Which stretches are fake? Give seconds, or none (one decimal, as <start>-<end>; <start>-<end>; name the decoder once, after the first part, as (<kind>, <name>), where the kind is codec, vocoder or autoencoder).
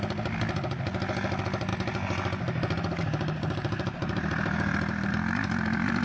none